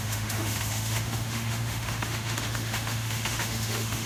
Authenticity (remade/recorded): remade